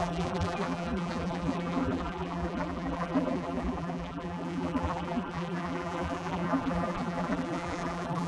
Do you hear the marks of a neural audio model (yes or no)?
yes